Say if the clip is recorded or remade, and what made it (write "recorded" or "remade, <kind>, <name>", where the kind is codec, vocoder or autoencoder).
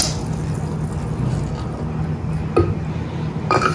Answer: recorded